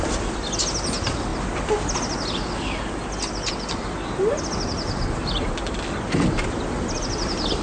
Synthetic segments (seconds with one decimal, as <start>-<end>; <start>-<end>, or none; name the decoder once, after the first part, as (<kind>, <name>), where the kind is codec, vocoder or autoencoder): none